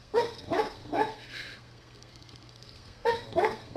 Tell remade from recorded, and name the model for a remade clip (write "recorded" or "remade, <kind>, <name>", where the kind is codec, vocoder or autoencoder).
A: remade, codec, SNAC